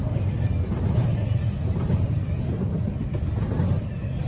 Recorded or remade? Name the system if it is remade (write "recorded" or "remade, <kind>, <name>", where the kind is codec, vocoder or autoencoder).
recorded